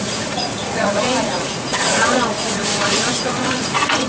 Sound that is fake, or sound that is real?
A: fake